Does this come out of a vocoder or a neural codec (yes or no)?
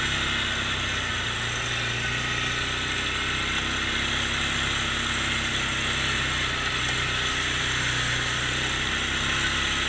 no